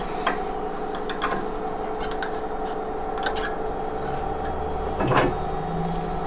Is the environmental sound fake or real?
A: real